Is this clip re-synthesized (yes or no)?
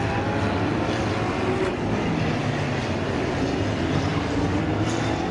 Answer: no